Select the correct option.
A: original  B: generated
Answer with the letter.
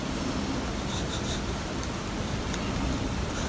A